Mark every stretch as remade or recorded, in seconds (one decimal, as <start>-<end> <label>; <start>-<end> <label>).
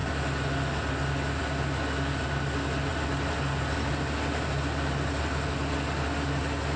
0.0-6.8 recorded